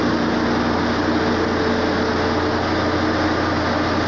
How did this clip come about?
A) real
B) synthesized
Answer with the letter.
A